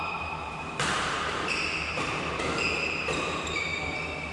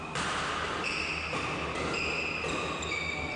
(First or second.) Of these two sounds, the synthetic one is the first